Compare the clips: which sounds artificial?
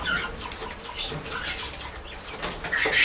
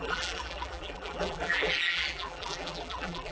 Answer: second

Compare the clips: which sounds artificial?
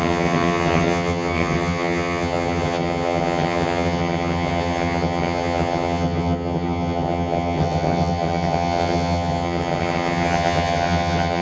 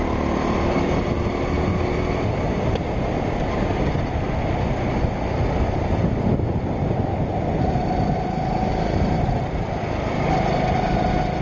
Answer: first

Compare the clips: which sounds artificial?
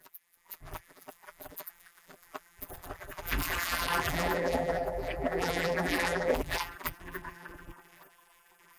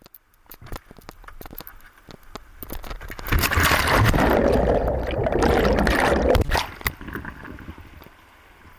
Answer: first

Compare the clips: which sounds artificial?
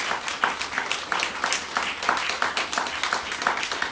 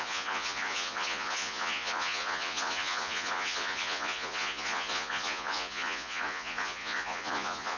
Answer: second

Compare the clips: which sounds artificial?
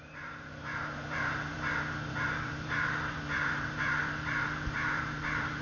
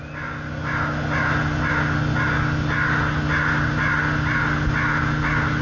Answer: first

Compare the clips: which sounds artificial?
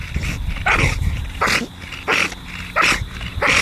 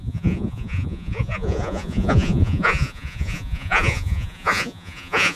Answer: second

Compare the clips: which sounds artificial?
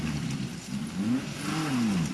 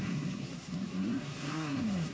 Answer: second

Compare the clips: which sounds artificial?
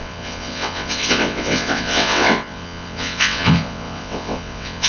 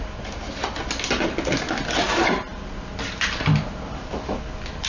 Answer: first